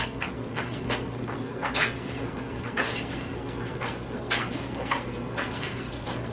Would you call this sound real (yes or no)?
no